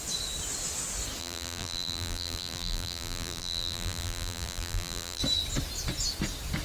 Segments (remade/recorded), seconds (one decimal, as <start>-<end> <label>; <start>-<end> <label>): 0.0-1.2 recorded; 1.2-5.2 remade; 5.2-6.6 recorded